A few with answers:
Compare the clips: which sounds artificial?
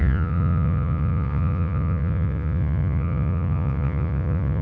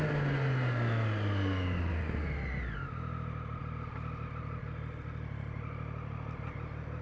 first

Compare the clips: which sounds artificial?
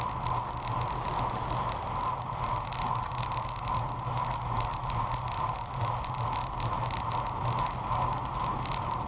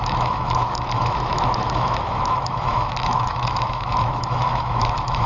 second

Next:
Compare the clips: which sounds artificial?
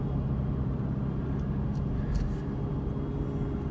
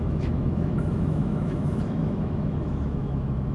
second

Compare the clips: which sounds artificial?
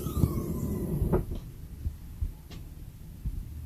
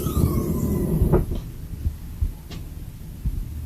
first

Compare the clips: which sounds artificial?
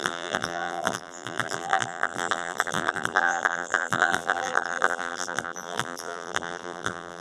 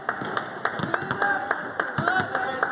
first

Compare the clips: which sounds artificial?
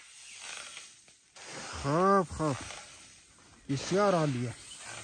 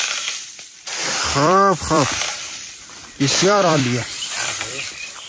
second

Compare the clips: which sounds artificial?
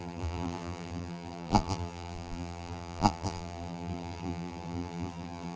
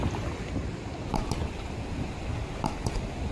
first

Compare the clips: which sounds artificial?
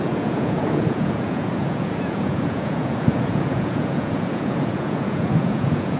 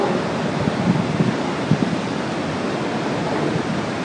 first